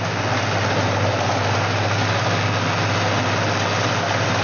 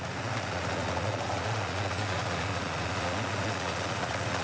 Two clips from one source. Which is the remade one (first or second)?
second